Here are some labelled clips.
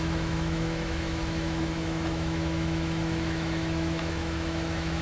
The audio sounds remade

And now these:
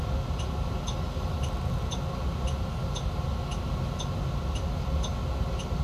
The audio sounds recorded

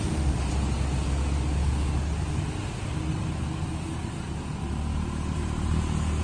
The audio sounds recorded